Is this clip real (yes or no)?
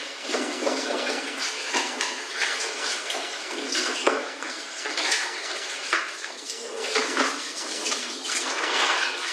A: no